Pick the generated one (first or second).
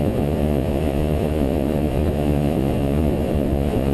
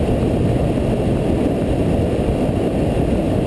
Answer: first